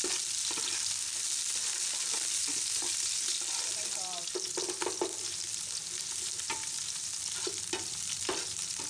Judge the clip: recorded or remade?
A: recorded